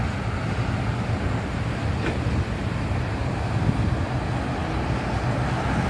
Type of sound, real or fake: real